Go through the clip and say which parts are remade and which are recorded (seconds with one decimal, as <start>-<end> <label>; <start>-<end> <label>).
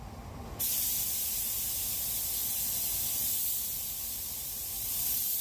0.0-5.4 recorded